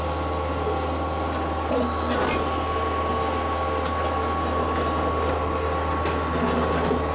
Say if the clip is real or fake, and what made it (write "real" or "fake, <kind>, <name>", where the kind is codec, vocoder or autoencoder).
real